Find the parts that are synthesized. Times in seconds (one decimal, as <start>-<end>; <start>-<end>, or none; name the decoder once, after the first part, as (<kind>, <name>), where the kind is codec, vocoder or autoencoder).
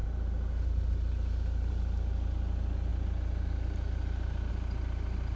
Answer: none